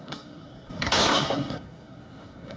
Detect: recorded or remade remade